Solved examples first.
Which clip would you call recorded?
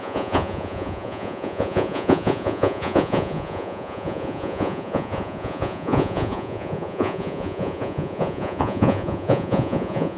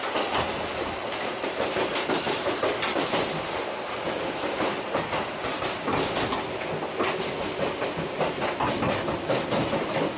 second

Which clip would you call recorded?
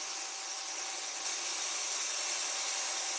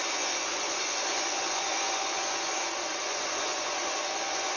first